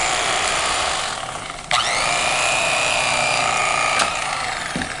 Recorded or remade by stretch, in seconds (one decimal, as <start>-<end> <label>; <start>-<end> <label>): 0.0-5.0 recorded